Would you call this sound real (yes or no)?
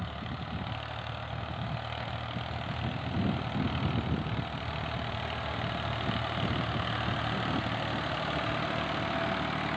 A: yes